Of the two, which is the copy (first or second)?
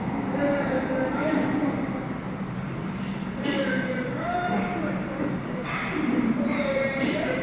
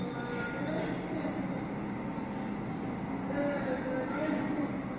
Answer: first